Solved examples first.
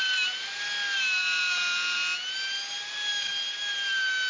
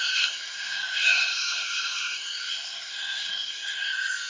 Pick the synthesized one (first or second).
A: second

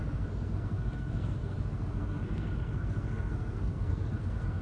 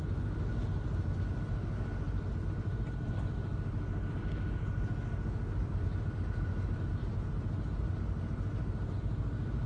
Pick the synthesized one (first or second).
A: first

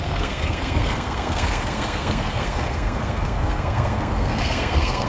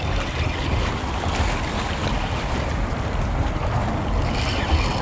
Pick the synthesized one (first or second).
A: first